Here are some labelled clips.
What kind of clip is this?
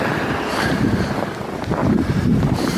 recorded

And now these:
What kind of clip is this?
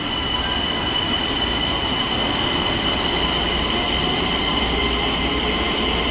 recorded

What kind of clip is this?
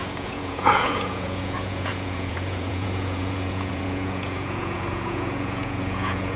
remade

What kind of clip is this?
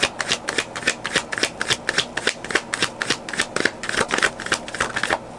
recorded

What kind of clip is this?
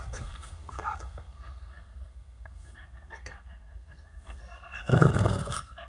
remade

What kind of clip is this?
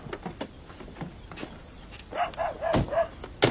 recorded